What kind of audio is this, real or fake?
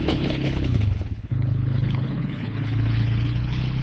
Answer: fake